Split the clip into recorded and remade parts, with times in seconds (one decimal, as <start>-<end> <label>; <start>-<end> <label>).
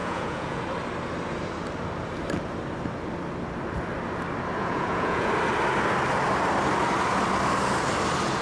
0.0-0.6 remade; 0.6-4.6 recorded; 4.6-5.3 remade; 5.3-8.4 recorded